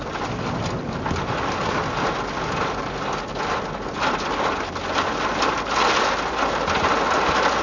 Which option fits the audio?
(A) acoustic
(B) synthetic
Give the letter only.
A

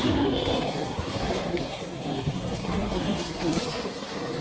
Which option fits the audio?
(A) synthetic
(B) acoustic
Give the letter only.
A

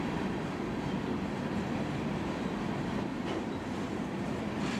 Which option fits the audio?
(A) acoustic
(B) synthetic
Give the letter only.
A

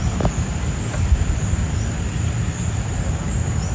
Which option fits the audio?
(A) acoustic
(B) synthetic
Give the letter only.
A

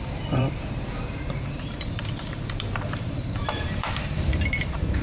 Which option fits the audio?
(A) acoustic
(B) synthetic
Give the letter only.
B